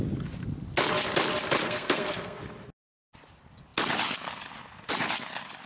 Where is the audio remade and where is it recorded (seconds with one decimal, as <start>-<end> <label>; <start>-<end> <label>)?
0.0-1.6 recorded; 1.6-2.4 remade; 2.4-5.7 recorded